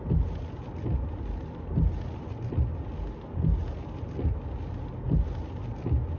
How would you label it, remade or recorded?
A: recorded